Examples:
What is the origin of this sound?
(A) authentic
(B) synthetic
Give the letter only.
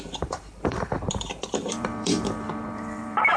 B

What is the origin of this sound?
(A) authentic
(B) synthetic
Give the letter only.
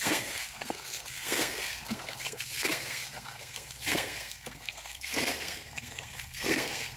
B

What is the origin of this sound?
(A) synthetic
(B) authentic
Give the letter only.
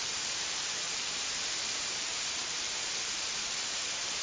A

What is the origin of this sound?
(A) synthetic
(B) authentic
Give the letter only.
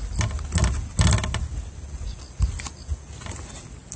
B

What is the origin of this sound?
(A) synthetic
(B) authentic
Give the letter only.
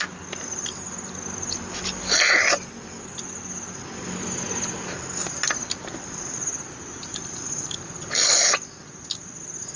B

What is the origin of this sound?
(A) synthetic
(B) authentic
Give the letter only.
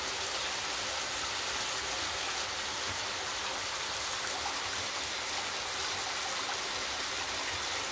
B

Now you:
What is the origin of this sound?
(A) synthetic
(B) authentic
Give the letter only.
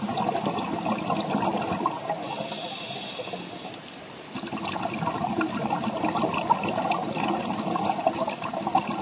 B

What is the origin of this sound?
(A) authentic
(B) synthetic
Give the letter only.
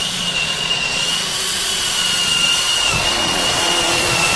B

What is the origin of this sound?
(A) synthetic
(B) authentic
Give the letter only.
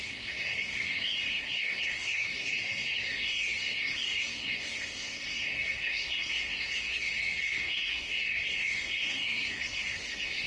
A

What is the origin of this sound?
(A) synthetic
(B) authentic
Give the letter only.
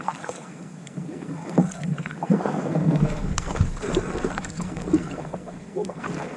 A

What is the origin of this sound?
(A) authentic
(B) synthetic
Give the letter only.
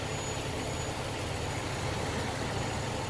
A